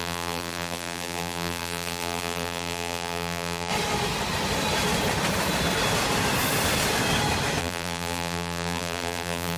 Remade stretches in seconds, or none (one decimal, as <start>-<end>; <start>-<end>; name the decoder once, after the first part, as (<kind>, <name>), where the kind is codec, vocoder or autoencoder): 0.0-3.7 (vocoder, BigVGAN v2); 7.6-9.6